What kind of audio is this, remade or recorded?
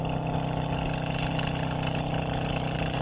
recorded